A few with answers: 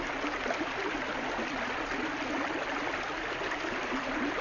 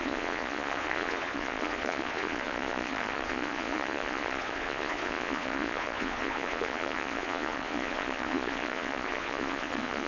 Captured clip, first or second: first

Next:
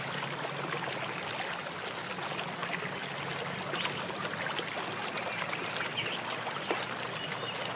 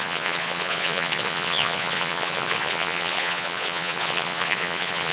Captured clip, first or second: first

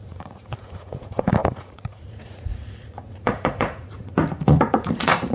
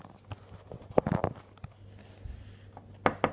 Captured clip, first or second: second